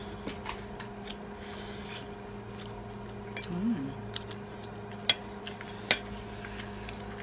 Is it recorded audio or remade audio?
recorded